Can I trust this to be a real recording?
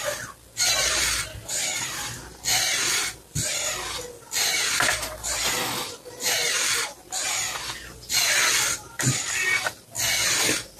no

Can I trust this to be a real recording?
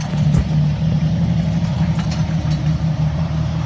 no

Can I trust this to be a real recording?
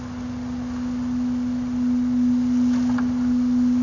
yes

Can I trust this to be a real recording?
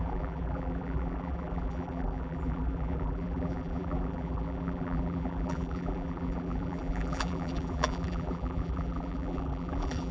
no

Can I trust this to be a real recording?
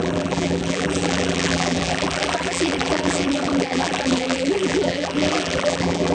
no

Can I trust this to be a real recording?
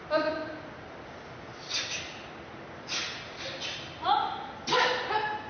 yes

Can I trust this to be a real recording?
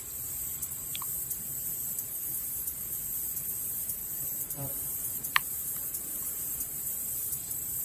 no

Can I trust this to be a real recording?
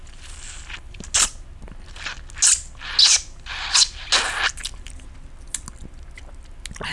yes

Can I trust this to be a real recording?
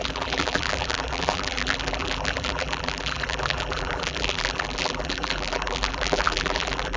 no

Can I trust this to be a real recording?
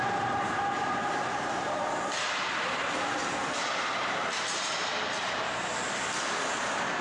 no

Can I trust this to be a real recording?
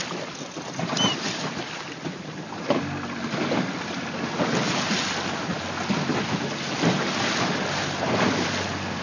yes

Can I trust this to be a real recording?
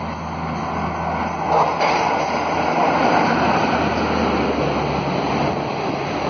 yes